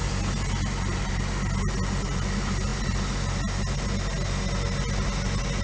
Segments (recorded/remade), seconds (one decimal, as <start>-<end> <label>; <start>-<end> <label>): 0.0-5.6 recorded